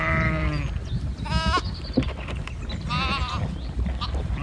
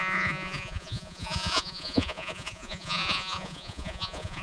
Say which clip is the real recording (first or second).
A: first